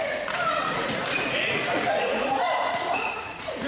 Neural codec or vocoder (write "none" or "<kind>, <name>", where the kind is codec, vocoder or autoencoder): vocoder, Vocos